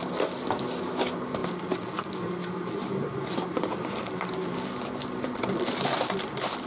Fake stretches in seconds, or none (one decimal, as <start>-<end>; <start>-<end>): none